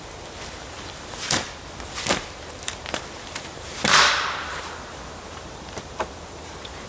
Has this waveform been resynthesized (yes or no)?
yes